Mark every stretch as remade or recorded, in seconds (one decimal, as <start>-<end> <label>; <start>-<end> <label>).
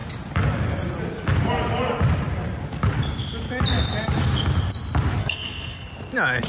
0.0-5.2 recorded; 5.2-5.9 remade; 5.9-6.5 recorded